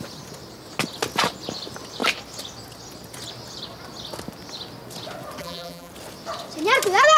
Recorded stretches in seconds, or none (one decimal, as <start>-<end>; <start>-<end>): 0.0-5.4; 5.9-7.2